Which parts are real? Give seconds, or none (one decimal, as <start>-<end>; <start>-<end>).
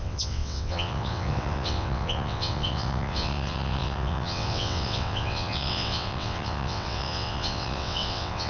none